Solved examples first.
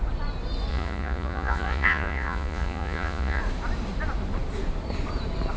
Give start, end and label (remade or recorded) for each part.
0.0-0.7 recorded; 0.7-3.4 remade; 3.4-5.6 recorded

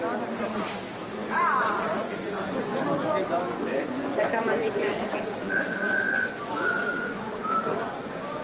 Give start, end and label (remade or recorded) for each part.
0.0-1.2 recorded; 1.2-2.8 remade; 2.8-3.5 recorded; 3.5-8.4 remade

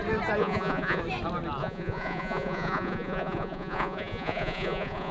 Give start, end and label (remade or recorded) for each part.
0.0-0.4 recorded; 0.4-1.0 remade; 1.0-1.6 recorded; 1.6-5.1 remade